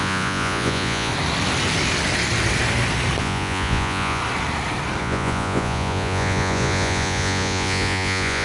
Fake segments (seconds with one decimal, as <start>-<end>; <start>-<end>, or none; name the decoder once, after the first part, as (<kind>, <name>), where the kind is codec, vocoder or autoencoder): 0.0-1.1 (vocoder, Vocos); 3.2-4.2; 5.0-8.4